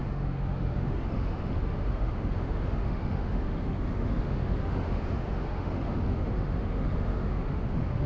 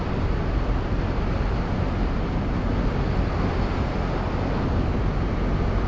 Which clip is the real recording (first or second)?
second